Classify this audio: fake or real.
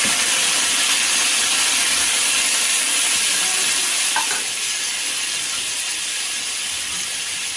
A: real